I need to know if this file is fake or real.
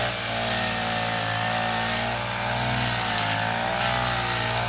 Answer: real